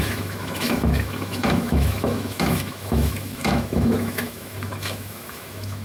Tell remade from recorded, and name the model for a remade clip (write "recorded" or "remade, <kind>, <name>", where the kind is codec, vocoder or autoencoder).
remade, autoencoder, DAC-VAE